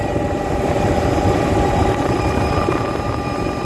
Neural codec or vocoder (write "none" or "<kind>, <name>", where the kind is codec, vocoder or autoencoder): vocoder, BigVGAN v2